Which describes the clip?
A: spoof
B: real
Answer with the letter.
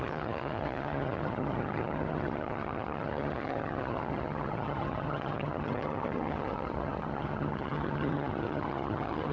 A